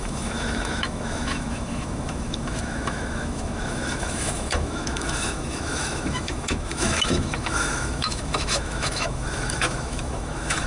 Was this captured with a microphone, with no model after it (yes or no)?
no